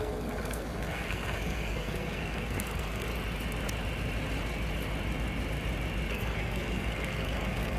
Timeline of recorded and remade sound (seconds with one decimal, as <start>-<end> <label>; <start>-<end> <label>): 0.0-3.1 remade; 3.1-6.1 recorded; 6.1-7.8 remade